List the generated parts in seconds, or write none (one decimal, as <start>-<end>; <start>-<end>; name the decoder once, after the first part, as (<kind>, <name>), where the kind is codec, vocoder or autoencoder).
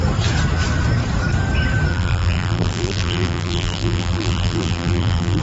1.9-5.4 (vocoder, BigVGAN v2)